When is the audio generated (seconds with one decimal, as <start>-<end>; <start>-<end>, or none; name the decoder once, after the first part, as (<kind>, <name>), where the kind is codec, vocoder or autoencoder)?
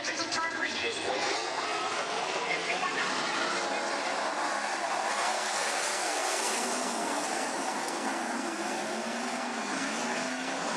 0.0-2.8 (codec, SNAC); 5.1-10.8